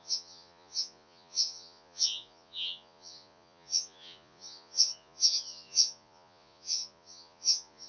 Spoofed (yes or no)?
yes